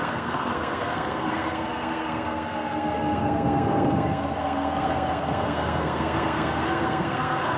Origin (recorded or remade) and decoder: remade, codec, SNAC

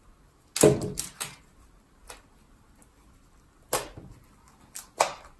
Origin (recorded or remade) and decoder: recorded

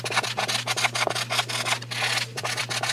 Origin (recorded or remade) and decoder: recorded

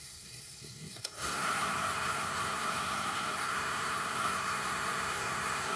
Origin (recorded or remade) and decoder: remade, codec, SNAC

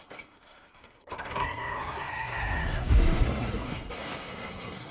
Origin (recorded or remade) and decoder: remade, codec, SNAC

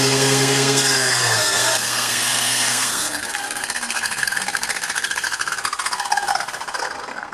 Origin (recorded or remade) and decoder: remade, codec, SNAC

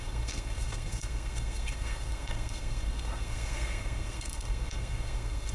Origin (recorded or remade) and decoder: remade, codec, SNAC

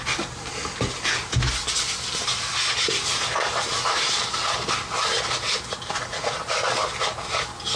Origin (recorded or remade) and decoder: recorded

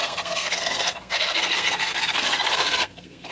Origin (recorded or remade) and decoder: remade, codec, SNAC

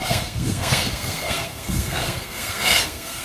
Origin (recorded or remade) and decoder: remade, codec, SNAC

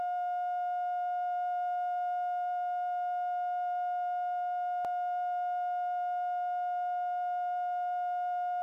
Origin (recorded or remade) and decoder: recorded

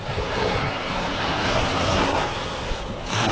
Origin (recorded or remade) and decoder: remade, codec, SNAC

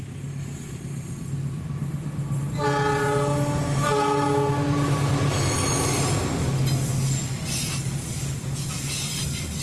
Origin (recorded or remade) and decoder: recorded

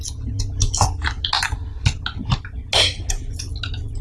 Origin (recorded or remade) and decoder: recorded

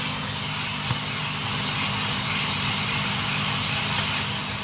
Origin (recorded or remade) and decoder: recorded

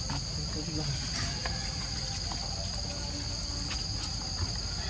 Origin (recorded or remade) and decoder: recorded